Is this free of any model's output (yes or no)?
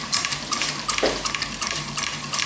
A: no